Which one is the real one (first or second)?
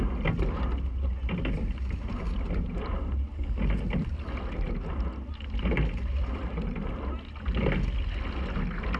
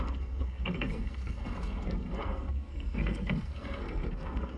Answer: first